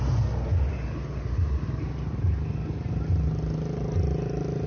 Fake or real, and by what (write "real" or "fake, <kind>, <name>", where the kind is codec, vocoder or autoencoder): real